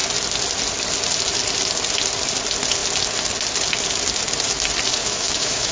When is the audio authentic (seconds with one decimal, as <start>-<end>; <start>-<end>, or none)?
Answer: 0.0-5.0